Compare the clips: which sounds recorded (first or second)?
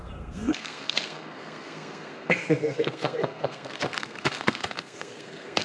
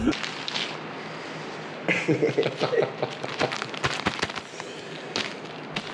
second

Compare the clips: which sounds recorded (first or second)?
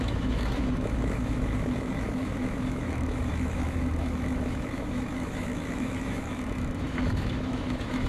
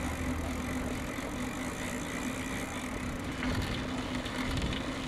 second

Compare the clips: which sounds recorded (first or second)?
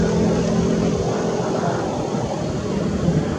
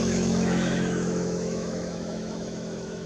first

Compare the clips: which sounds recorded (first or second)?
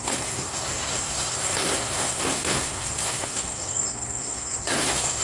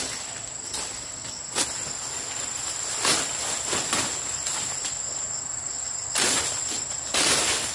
second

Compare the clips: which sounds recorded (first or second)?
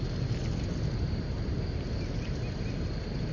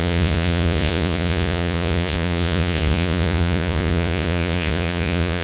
first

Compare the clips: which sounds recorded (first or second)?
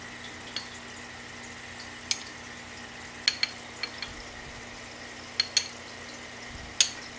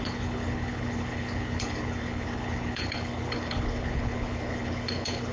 first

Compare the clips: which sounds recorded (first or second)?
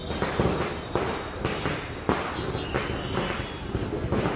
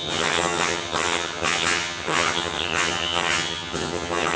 first